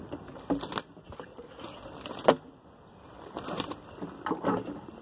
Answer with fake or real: real